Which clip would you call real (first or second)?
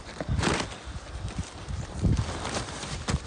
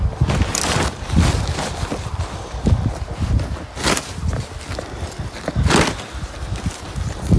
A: second